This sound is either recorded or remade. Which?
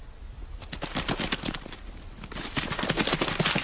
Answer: recorded